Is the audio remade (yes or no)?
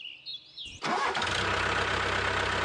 no